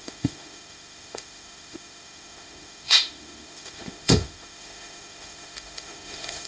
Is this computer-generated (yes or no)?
yes